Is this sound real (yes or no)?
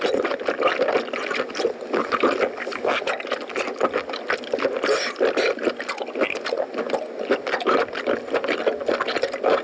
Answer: yes